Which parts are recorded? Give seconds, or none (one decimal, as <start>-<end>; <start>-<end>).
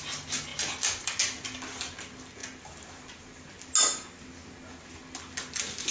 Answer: 0.0-5.9